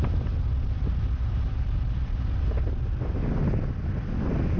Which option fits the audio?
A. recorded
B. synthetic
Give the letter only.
A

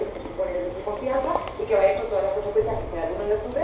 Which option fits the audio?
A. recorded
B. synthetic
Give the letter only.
A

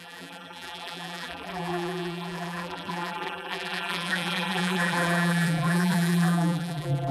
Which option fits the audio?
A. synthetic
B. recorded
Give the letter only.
A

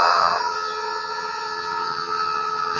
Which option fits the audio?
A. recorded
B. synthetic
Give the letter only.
B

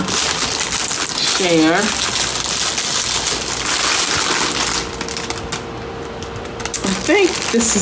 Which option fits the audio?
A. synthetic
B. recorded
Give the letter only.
B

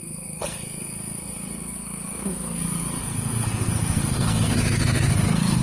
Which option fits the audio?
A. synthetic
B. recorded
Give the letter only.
A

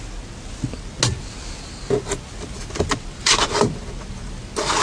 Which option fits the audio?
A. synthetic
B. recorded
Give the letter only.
B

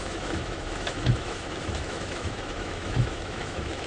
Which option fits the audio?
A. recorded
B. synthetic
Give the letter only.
B